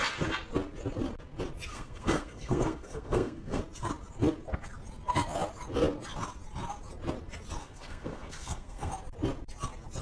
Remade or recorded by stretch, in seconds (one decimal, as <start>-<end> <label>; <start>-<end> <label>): 0.0-1.7 recorded; 1.7-3.6 remade; 3.6-7.6 recorded; 7.6-8.9 remade; 8.9-10.0 recorded